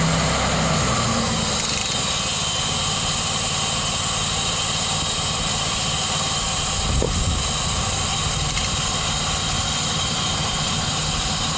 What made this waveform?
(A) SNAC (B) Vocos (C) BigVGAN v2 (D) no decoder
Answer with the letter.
D